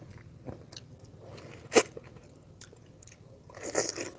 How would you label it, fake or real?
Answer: real